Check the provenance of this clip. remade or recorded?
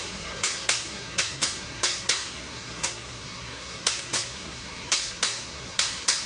remade